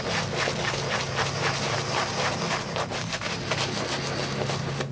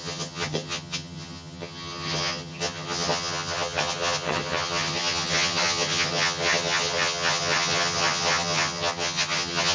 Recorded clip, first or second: first